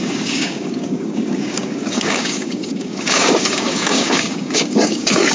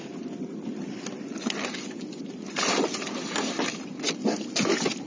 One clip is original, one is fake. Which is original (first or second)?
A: second